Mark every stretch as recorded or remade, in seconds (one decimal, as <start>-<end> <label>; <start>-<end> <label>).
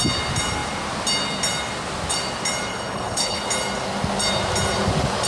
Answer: 0.0-2.7 recorded; 2.7-3.4 remade; 3.4-5.3 recorded